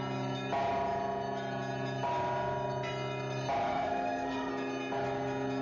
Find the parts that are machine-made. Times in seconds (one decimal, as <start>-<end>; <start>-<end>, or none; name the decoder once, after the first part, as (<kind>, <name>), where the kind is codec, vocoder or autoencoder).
3.7-4.5 (codec, SNAC)